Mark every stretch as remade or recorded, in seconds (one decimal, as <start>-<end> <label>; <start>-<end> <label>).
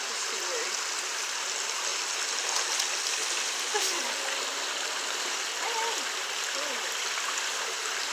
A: 0.0-1.9 remade; 1.9-4.9 recorded; 4.9-8.1 remade